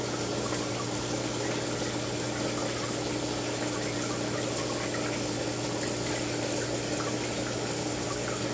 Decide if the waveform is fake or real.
real